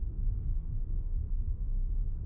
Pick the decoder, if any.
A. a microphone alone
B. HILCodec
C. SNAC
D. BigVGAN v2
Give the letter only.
C